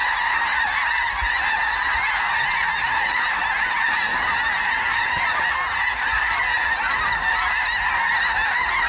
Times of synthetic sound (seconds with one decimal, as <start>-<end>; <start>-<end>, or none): none